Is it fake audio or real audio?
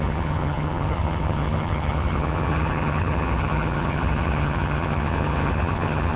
fake